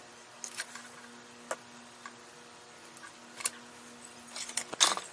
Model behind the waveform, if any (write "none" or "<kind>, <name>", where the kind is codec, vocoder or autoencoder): none